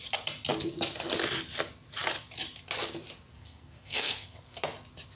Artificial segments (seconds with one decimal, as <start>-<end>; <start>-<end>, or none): 3.3-4.6

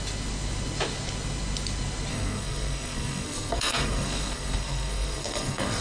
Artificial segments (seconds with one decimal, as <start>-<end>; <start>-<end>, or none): 2.1-5.8

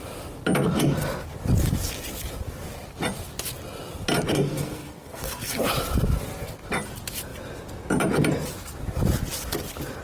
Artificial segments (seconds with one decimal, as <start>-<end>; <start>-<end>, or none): 4.3-5.6

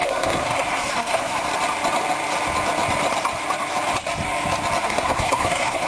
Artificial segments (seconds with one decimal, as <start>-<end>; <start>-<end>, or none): 0.0-1.5; 4.8-5.9

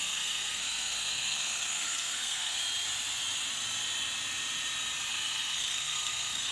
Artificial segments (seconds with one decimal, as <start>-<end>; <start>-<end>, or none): 0.0-2.6; 5.1-6.5

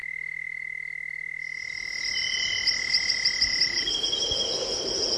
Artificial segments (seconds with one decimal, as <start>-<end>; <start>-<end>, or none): none

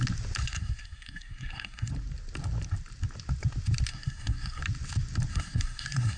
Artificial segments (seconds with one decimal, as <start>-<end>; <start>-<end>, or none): 0.4-1.9; 3.9-4.6; 5.3-6.2